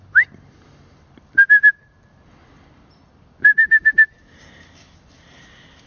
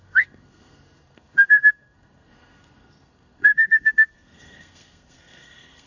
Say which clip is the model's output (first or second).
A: second